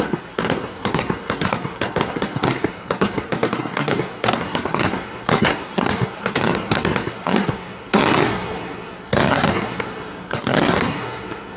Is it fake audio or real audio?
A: fake